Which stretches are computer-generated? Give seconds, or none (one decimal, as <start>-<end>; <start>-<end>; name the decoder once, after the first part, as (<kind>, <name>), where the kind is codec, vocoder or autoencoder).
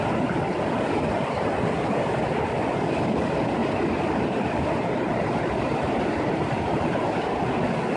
3.6-7.0 (vocoder, BigVGAN v2)